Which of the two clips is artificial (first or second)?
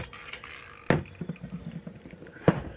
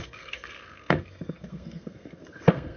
second